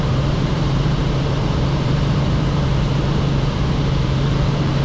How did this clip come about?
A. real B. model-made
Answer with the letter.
B